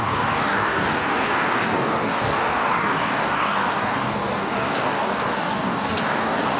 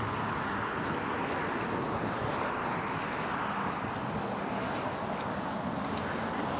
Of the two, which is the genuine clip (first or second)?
second